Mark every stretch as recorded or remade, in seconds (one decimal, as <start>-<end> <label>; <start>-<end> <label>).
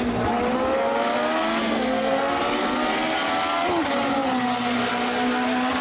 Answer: 0.0-1.6 recorded; 1.6-2.4 remade; 2.4-5.8 recorded